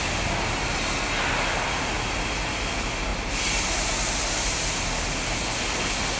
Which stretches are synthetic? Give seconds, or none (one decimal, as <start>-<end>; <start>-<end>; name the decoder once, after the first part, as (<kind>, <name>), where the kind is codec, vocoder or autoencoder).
3.1-4.6 (vocoder, BigVGAN v2)